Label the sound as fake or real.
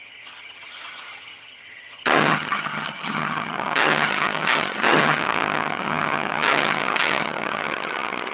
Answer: fake